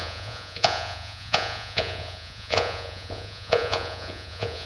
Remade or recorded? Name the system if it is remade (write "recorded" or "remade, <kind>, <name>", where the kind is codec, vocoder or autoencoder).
remade, vocoder, Vocos